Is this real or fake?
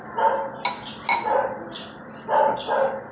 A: real